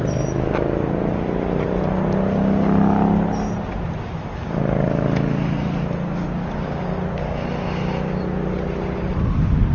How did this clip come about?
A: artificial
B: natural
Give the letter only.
B